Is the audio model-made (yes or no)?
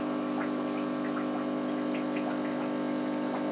no